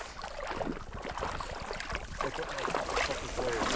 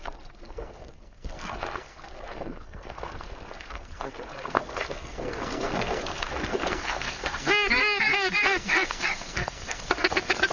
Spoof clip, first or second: second